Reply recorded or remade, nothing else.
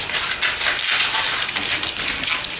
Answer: recorded